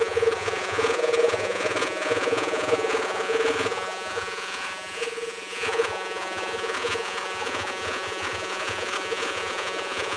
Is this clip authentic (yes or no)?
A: no